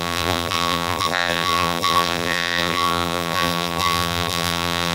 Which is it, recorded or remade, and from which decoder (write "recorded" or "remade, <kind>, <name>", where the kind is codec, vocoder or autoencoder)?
remade, vocoder, BigVGAN v2